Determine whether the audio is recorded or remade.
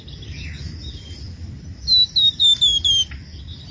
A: recorded